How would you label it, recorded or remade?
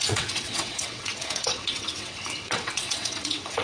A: remade